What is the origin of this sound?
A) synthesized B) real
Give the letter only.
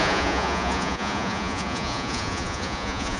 A